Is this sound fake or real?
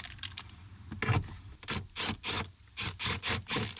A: real